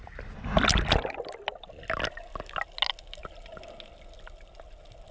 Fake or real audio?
real